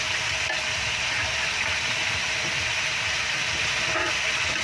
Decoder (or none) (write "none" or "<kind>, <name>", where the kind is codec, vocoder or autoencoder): none